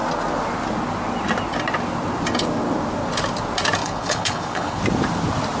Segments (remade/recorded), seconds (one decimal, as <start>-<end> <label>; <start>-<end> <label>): 0.0-3.8 recorded; 3.8-4.8 remade; 4.8-5.6 recorded